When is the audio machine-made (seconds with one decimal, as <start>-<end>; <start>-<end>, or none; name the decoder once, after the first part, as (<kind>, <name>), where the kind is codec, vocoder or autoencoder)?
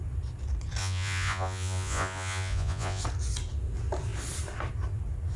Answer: 0.8-3.0 (vocoder, Vocos)